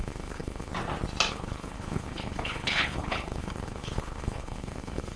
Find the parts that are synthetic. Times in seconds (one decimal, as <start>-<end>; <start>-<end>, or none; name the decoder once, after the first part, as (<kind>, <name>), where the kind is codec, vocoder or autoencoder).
0.0-0.7 (codec, HILCodec); 1.3-5.2